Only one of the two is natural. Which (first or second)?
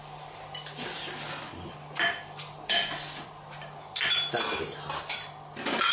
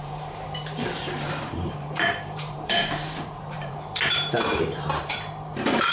first